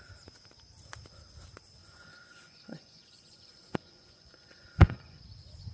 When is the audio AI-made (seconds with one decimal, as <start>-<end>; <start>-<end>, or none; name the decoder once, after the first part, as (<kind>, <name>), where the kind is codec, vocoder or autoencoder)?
1.8-5.2 (vocoder, Vocos)